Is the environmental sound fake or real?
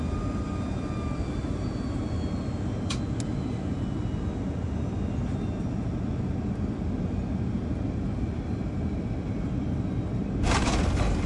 real